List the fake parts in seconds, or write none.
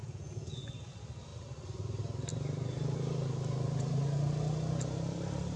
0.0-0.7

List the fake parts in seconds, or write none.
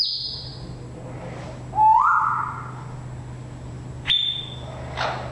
none